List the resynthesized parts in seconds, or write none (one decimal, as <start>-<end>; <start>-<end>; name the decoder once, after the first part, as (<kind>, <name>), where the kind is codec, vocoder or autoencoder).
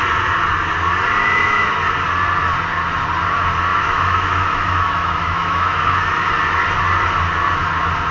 1.2-1.8 (autoencoder, DAC-VAE); 3.7-6.3